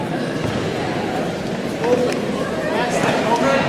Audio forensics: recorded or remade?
remade